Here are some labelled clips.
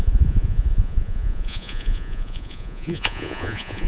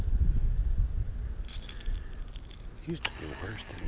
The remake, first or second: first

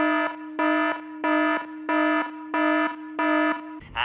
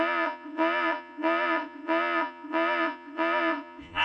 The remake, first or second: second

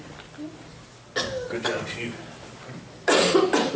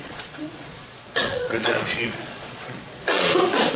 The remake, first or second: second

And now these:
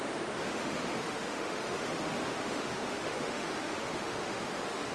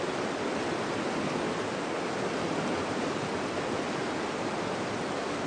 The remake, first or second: first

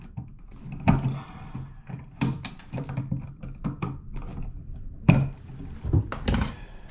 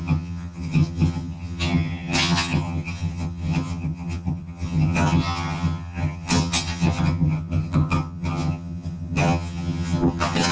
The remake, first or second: second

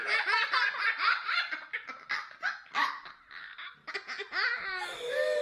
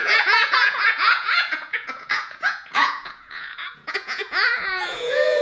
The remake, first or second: second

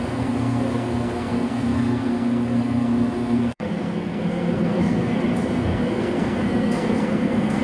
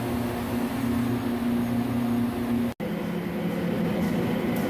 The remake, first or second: first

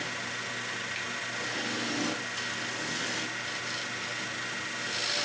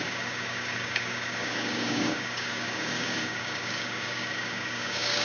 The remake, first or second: second